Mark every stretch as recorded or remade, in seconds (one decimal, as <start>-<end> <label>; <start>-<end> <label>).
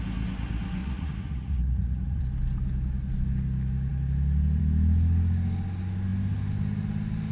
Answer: 0.0-0.8 recorded; 0.8-2.2 remade; 2.2-7.3 recorded